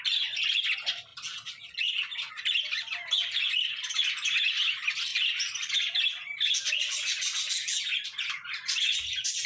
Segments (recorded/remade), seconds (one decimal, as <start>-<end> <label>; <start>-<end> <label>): 0.0-5.1 recorded; 5.1-5.7 remade; 5.7-9.5 recorded